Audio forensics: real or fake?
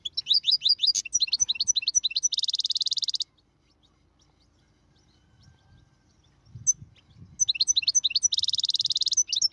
real